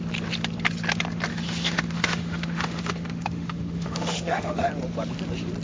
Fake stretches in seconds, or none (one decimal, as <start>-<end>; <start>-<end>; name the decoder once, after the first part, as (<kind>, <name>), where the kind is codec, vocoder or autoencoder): 1.3-4.7 (autoencoder, DAC-VAE)